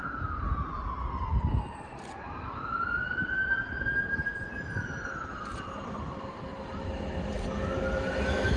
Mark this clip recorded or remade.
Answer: recorded